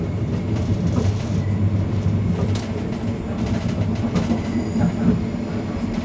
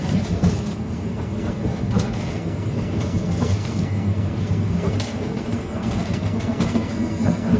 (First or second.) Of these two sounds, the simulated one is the second